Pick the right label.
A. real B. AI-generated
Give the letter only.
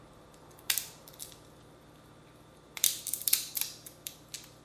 B